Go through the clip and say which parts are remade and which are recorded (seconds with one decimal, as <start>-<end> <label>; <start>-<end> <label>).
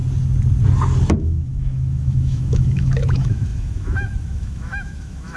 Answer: 0.0-1.1 recorded; 1.1-5.4 remade